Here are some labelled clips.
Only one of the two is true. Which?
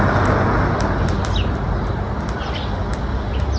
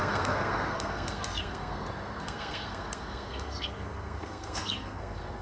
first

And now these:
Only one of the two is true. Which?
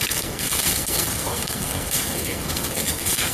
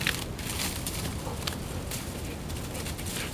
second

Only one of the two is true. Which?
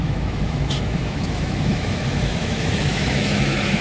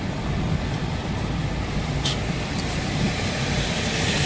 second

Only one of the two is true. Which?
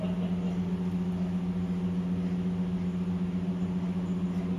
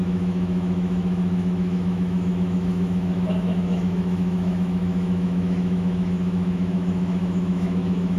first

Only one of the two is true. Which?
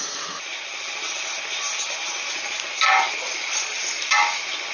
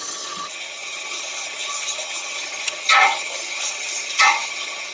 first